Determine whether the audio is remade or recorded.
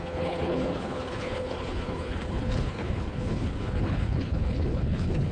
remade